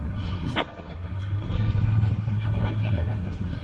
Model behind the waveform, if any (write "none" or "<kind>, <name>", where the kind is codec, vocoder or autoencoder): codec, SNAC